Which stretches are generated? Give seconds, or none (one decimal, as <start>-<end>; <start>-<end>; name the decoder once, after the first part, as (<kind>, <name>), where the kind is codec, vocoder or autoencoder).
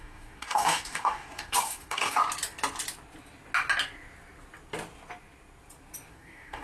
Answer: 0.0-2.2 (codec, DAC); 6.1-6.6